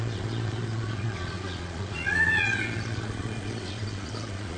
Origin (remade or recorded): remade